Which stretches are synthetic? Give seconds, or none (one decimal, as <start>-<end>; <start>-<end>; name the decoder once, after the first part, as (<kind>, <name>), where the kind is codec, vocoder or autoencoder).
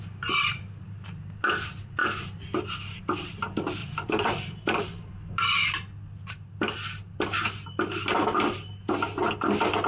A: 3.8-5.1 (vocoder, BigVGAN v2)